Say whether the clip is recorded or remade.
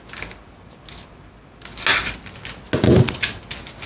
recorded